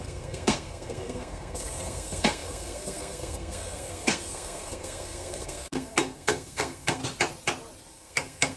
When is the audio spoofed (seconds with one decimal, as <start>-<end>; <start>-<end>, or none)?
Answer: 0.0-7.0; 7.9-8.6